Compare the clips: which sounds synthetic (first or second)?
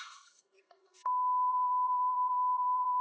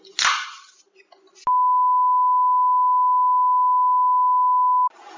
first